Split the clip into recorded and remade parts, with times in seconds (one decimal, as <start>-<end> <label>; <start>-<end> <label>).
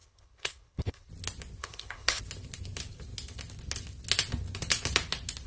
0.0-1.1 remade; 1.1-1.6 recorded; 1.6-2.2 remade; 2.2-5.5 recorded